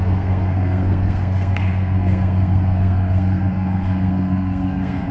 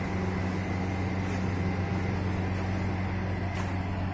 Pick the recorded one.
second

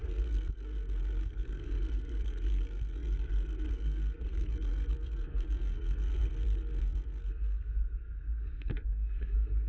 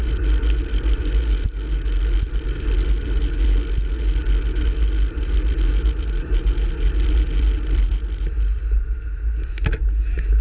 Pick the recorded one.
second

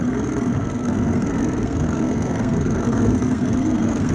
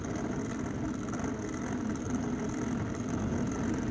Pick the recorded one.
second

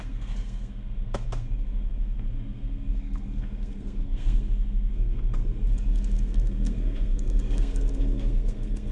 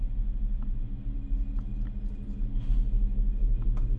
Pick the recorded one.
second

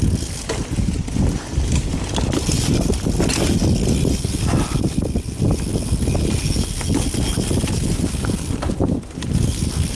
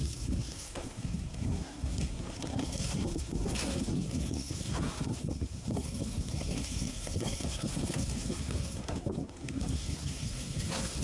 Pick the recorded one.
first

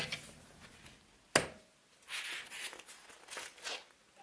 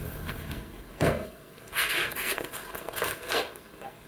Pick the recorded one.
first